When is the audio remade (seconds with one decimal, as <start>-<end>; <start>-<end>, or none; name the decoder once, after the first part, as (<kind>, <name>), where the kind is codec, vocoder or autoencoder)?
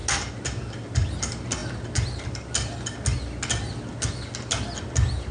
none